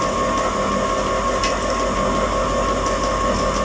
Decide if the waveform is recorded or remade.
recorded